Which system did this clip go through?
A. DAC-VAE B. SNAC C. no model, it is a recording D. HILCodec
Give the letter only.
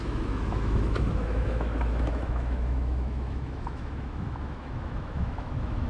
A